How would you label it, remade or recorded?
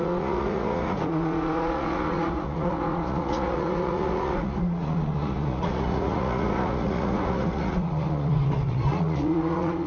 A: remade